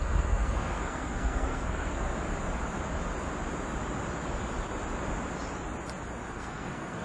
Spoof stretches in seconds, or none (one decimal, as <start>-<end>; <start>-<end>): 0.0-2.1; 6.3-7.0

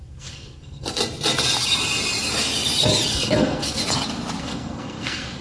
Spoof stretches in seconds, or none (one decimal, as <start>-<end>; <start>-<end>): 0.0-1.0; 3.1-3.8; 4.4-5.4

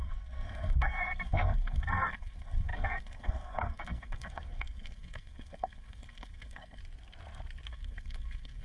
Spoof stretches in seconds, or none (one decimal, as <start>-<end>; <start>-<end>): 0.0-6.8; 7.7-8.6

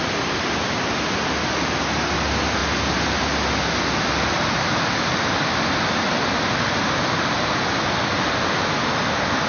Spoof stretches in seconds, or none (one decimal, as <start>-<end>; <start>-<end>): none

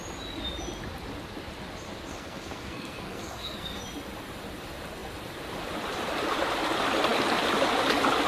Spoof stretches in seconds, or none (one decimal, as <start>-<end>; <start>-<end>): 2.1-3.8

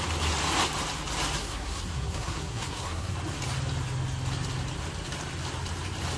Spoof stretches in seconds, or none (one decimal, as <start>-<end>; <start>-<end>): 1.4-3.1